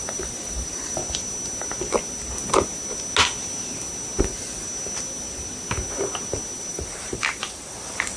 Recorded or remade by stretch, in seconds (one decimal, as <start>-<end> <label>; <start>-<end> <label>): 0.0-1.0 remade; 1.0-4.2 recorded; 4.2-4.7 remade; 4.7-6.7 recorded; 6.7-8.2 remade